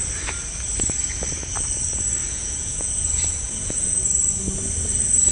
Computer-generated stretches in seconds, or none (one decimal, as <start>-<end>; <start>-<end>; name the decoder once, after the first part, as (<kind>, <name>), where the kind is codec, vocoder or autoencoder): 2.2-4.0 (vocoder, Vocos)